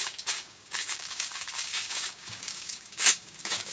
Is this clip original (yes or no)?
no